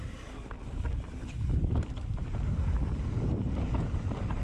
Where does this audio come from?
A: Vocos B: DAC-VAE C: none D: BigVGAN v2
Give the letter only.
C